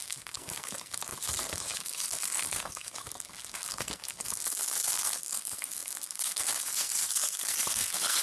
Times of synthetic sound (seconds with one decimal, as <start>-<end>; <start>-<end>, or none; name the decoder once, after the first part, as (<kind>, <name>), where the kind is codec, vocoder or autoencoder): 0.0-8.2 (codec, SNAC)